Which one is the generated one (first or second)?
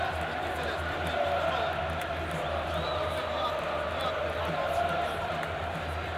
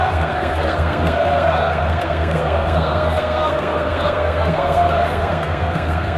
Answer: second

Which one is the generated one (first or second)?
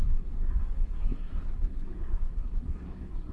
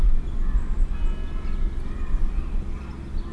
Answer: first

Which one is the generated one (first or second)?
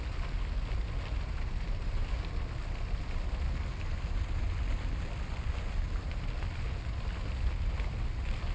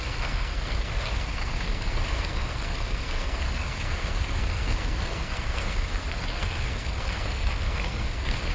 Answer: second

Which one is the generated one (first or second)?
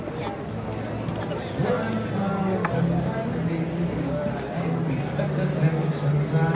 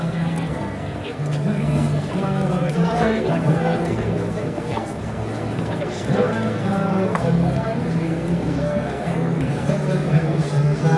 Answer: second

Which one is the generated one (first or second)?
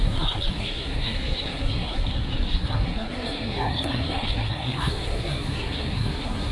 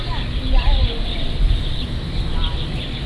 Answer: first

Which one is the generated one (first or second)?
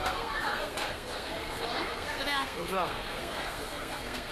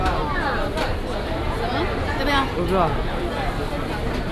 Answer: first